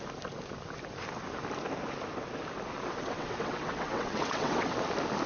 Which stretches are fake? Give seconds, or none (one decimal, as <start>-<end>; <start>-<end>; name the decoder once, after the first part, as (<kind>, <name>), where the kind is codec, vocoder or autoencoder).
2.9-4.7 (vocoder, WaveNeXt)